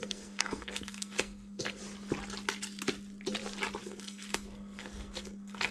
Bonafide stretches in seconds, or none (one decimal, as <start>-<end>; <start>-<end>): 1.8-3.8